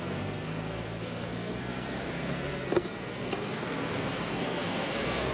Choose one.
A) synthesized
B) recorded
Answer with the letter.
A